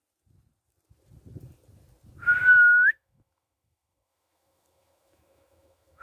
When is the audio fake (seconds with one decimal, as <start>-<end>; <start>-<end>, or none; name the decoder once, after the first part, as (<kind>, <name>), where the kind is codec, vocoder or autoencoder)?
2.4-6.0 (autoencoder, DAC-VAE)